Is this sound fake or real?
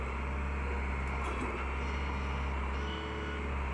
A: real